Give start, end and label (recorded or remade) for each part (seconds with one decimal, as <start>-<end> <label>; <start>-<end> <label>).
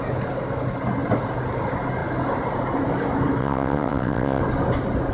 0.0-3.4 recorded; 3.4-4.4 remade; 4.4-5.1 recorded